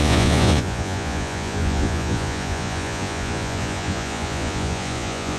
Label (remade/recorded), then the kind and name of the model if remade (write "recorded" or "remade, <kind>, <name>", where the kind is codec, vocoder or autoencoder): remade, vocoder, Vocos